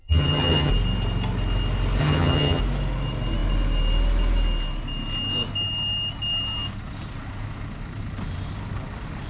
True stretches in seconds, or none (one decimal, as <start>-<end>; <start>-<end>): 0.7-2.0; 2.6-9.3